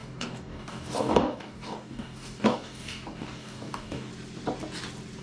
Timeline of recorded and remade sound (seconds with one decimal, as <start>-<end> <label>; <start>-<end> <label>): 0.0-4.1 remade; 4.1-5.2 recorded

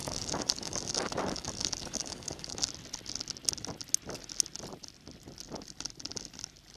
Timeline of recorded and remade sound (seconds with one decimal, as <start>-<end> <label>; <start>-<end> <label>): 0.0-2.6 remade; 2.6-6.8 recorded

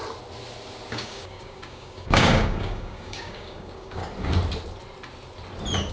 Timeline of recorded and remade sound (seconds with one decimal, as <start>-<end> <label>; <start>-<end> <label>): 0.0-0.9 recorded; 0.9-4.0 remade; 4.0-5.9 recorded

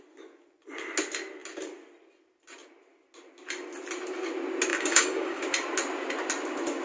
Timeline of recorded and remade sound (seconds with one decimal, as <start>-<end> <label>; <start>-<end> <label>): 0.0-4.7 recorded; 4.7-5.4 remade; 5.4-6.8 recorded

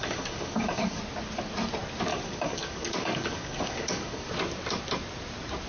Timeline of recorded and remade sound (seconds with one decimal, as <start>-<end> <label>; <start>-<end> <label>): 0.0-1.0 remade; 1.0-2.1 recorded; 2.1-4.3 remade; 4.3-5.7 recorded

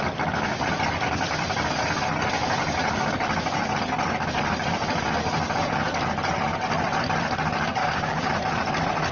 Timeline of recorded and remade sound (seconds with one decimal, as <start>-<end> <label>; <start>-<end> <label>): 0.0-7.8 recorded; 7.8-8.3 remade; 8.3-9.1 recorded